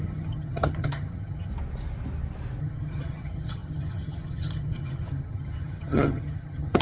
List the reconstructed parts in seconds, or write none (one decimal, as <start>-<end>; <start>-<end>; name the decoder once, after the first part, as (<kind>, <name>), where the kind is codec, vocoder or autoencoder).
0.0-1.5 (vocoder, HiFi-GAN); 2.6-6.8